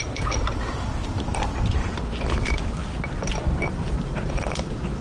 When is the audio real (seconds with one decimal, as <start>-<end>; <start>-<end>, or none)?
none